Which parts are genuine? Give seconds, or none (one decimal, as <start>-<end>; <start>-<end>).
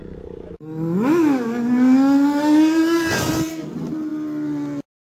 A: 3.1-5.1